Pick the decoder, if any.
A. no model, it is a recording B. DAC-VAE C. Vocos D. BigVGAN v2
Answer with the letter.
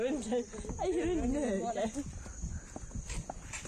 A